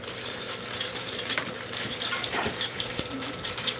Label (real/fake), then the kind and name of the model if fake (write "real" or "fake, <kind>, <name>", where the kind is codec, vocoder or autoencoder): fake, vocoder, BigVGAN v2